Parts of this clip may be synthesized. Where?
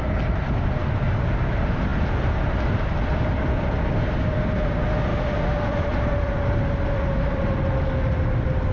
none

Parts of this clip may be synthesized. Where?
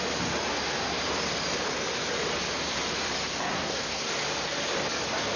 3.5-4.1 (codec, SNAC)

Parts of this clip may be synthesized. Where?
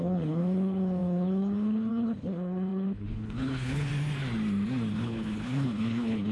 0.0-3.9 (codec, HILCodec); 4.9-6.3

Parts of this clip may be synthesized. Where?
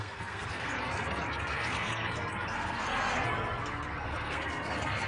0.0-5.1 (codec, SNAC)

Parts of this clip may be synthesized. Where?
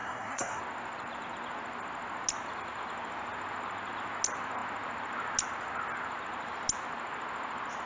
0.0-0.6 (codec, SNAC)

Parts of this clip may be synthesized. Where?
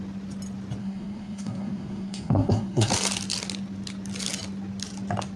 0.8-2.9 (codec, SNAC)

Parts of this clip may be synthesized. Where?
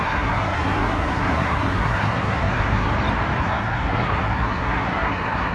0.0-2.9 (codec, SNAC); 3.4-5.5